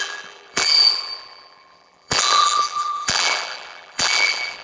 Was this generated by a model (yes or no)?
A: yes